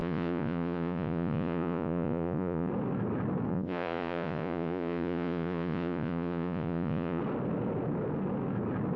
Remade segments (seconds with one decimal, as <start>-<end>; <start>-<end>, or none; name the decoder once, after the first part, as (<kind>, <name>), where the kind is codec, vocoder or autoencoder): 0.0-2.7 (vocoder, Vocos); 3.5-7.2